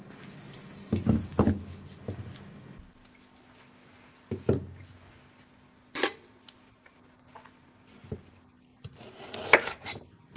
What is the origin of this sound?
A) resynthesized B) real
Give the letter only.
B